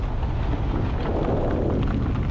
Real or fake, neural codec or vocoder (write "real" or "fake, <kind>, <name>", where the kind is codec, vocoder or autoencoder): real